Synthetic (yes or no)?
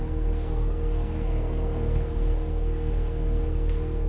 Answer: yes